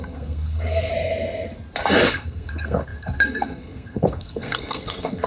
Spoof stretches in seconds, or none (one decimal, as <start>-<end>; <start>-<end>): 0.0-0.9; 2.1-5.3